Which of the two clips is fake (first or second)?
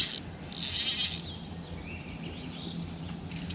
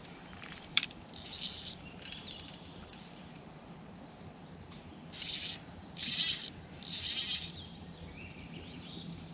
second